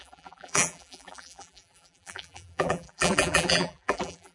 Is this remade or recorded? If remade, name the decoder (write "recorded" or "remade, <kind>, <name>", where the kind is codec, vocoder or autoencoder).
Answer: remade, vocoder, BigVGAN v2